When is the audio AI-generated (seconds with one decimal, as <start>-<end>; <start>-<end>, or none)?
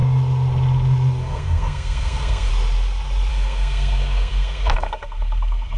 1.2-2.5; 3.3-5.8